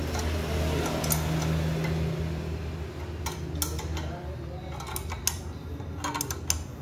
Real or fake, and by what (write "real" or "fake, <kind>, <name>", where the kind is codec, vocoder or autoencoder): real